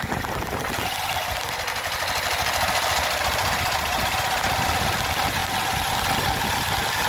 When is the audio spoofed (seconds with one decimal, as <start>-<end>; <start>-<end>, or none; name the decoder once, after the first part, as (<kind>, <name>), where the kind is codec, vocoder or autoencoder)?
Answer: none